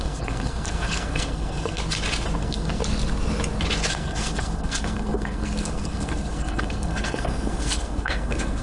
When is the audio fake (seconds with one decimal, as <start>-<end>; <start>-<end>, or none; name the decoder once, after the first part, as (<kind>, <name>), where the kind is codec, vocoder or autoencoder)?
0.0-1.8 (codec, SNAC); 2.4-2.8; 3.9-8.6